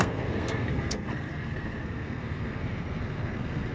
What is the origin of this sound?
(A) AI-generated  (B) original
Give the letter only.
A